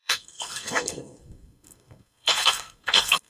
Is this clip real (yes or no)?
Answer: no